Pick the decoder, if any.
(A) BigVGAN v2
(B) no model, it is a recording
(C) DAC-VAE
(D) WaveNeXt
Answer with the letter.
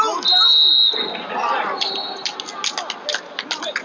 B